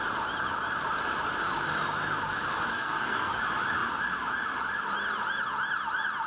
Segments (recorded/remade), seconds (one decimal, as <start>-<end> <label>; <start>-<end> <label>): 0.0-2.7 recorded; 2.7-3.4 remade; 3.4-6.3 recorded